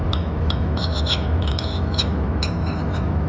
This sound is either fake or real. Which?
fake